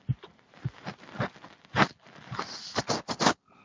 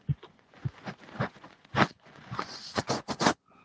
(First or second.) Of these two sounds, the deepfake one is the second